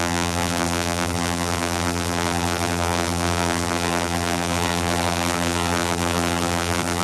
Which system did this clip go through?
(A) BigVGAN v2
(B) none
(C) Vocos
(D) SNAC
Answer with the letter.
A